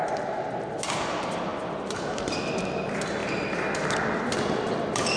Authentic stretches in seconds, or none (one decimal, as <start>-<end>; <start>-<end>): 0.0-3.2; 3.9-5.2